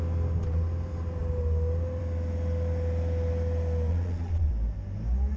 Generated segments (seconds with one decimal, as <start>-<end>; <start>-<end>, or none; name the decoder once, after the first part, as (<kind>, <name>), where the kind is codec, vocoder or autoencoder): 3.9-4.5 (vocoder, Vocos)